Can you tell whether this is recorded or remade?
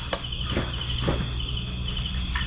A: recorded